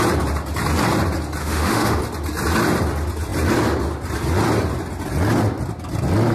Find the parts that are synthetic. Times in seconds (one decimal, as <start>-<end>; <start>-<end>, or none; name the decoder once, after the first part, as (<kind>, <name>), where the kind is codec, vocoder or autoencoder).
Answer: 1.4-2.0 (autoencoder, DAC-VAE)